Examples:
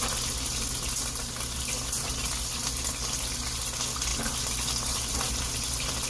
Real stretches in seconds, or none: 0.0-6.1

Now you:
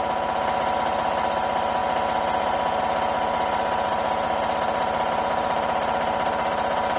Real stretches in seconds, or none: 0.0-7.0

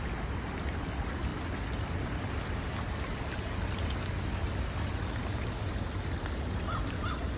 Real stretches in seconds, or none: 0.0-7.4